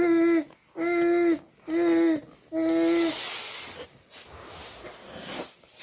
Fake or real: real